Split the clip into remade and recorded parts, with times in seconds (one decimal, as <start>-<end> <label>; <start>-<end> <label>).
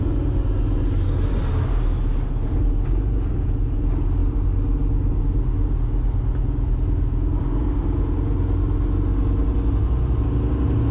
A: 0.0-10.9 recorded